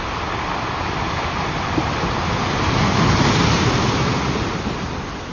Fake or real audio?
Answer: real